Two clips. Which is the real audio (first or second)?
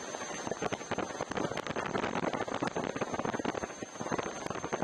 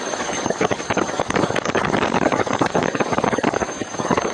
first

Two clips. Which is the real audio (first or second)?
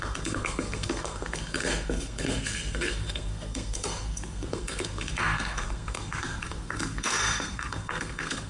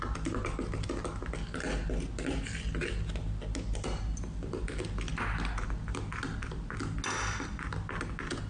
second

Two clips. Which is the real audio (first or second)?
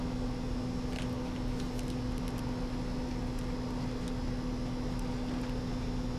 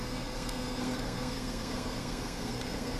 first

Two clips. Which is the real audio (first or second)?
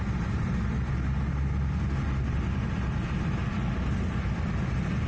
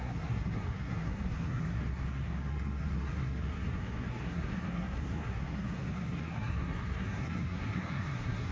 first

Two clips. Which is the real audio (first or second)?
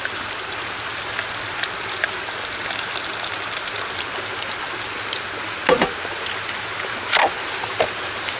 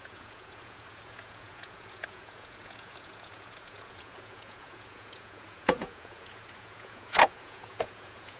first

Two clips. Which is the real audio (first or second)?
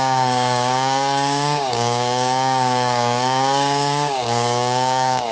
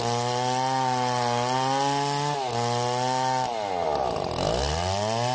second